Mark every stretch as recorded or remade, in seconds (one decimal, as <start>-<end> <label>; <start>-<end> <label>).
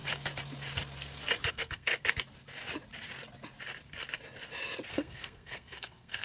0.0-1.5 recorded; 1.5-1.9 remade; 1.9-4.9 recorded; 4.9-6.2 remade